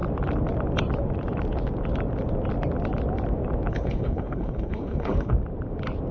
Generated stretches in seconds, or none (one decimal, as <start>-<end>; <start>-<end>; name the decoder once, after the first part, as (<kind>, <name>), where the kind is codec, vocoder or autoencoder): 3.7-5.3 (codec, HILCodec)